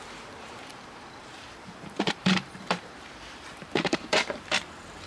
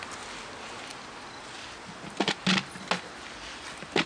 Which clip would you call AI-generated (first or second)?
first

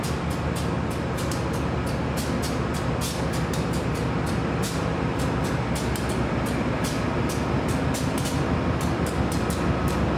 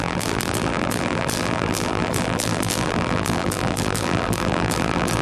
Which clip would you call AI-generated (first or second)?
second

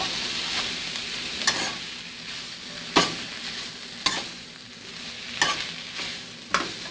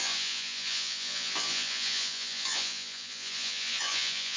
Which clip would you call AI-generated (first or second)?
second